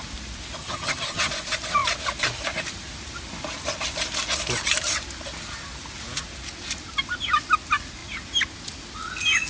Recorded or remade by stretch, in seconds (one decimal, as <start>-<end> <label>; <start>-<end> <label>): 0.0-0.6 recorded; 0.6-1.3 remade; 1.3-9.5 recorded